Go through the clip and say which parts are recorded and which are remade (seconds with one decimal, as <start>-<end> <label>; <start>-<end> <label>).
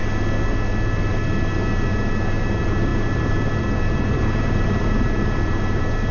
0.0-1.1 recorded; 1.1-6.1 remade